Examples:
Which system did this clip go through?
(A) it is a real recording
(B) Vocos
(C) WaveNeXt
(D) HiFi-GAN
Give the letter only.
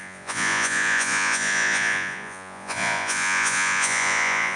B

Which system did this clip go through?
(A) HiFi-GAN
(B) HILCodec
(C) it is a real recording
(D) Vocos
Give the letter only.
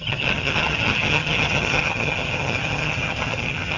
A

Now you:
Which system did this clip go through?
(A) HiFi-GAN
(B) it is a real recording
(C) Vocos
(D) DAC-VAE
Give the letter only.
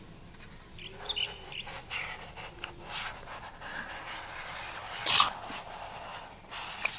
B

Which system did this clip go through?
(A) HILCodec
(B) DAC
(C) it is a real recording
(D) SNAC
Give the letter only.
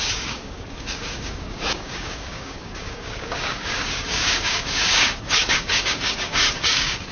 B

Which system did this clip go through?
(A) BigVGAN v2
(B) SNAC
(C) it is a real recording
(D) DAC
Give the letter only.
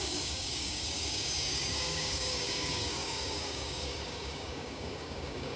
D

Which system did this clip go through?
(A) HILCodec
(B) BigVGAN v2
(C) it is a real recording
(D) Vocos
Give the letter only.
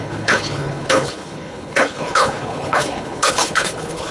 A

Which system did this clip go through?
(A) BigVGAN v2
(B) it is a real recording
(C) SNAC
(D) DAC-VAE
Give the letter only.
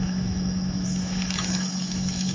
D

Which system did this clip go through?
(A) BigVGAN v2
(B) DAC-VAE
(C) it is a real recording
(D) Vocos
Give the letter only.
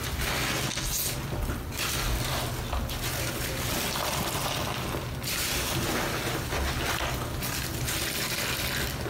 C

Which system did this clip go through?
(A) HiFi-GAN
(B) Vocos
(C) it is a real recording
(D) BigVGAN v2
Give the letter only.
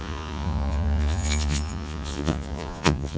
B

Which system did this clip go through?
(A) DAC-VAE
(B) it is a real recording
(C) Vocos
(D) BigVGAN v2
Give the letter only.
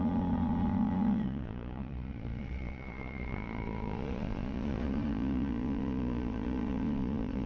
C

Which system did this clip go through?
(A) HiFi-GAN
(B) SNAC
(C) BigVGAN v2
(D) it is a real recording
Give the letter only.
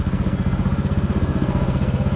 B